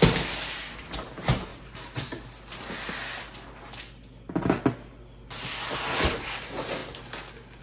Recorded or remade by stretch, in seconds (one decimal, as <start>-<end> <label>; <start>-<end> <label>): 0.0-7.6 recorded